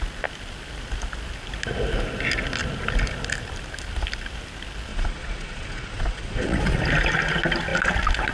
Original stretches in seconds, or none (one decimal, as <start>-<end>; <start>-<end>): 0.0-4.9; 6.8-8.3